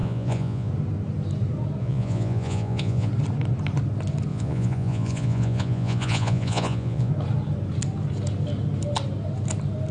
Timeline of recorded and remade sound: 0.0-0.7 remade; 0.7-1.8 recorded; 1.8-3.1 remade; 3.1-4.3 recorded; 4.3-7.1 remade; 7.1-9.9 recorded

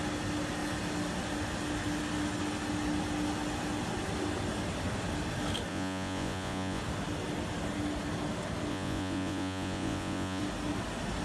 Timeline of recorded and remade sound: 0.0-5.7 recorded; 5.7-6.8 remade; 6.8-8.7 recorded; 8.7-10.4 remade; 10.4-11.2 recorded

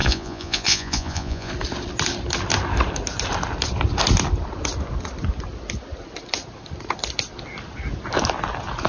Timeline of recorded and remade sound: 0.0-1.5 remade; 1.5-8.9 recorded

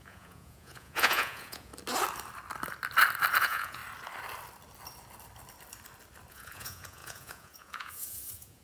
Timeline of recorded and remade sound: 0.0-1.7 remade; 1.7-3.4 recorded; 3.4-3.8 remade; 3.8-6.3 recorded; 6.3-8.6 remade

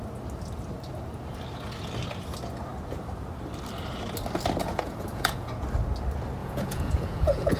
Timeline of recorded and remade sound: 0.0-4.6 recorded; 4.6-5.5 remade; 5.5-6.4 recorded; 6.4-7.6 remade

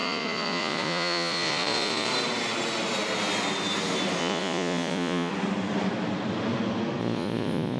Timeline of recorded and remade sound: 0.0-2.1 remade; 2.1-4.2 recorded; 4.2-5.3 remade; 5.3-7.0 recorded; 7.0-7.8 remade

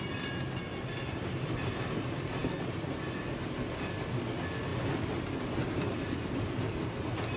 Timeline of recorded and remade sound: 0.0-7.4 recorded

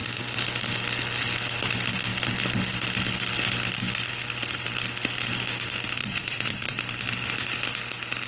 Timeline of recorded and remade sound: 0.0-6.0 recorded; 6.0-6.8 remade; 6.8-8.3 recorded